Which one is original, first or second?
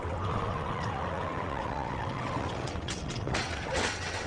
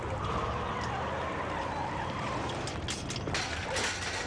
second